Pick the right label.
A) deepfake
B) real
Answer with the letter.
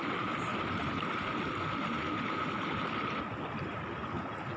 B